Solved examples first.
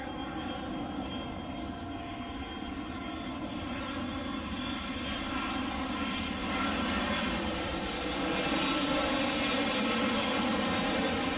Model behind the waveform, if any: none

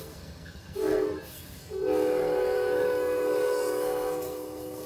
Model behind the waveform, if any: codec, SNAC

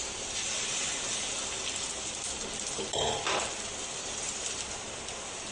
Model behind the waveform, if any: none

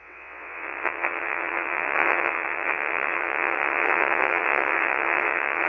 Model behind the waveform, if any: vocoder, WaveNeXt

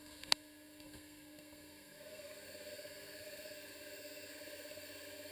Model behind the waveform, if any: codec, SNAC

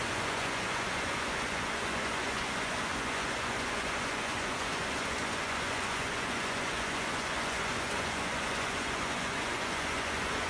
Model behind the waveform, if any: vocoder, Vocos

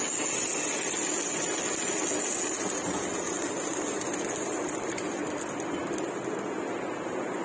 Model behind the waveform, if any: none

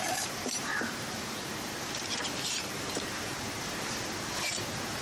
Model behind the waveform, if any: vocoder, BigVGAN v2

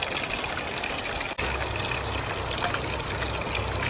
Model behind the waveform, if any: none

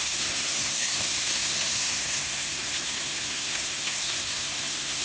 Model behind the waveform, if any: codec, SNAC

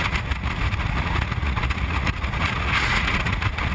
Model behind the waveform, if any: vocoder, Vocos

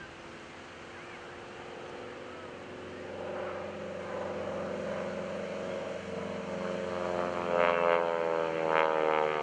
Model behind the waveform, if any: none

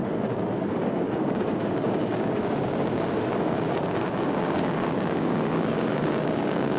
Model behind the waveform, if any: codec, DAC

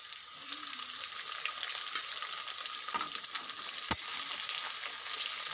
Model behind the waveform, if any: none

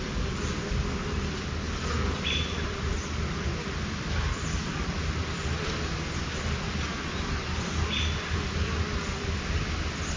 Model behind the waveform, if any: none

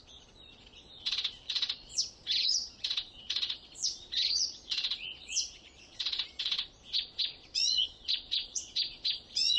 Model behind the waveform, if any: vocoder, Vocos